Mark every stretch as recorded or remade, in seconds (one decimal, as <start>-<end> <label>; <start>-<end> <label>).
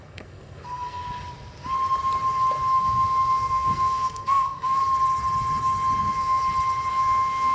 0.0-1.0 remade; 1.0-2.8 recorded; 2.8-4.8 remade; 4.8-6.0 recorded; 6.0-6.4 remade; 6.4-6.9 recorded; 6.9-7.5 remade